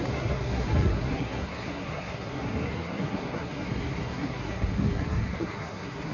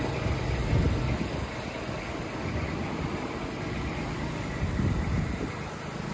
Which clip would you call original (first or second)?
second